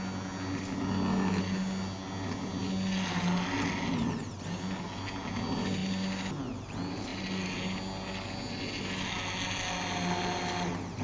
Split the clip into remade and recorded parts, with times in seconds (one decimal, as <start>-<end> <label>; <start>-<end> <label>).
0.0-11.0 recorded